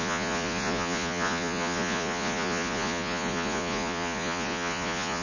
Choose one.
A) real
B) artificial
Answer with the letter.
B